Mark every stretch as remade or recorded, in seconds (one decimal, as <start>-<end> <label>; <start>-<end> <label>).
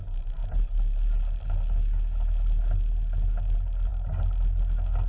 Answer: 0.0-5.1 recorded